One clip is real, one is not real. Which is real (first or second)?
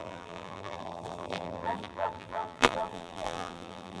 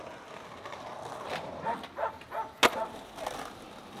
second